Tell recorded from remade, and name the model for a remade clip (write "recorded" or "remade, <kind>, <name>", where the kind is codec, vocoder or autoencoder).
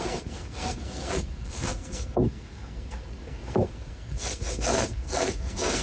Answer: remade, codec, SNAC